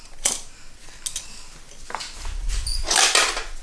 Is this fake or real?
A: real